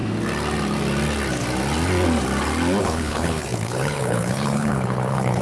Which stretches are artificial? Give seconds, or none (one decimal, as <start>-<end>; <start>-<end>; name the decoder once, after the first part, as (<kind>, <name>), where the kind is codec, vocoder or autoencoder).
2.8-5.4 (codec, HILCodec)